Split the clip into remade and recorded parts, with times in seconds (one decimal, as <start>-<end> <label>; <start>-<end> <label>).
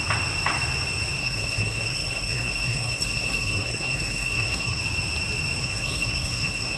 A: 0.0-1.2 recorded; 1.2-4.8 remade; 4.8-5.6 recorded; 5.6-6.8 remade